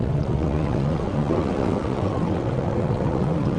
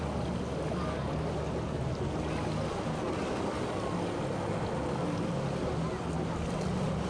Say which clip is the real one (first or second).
second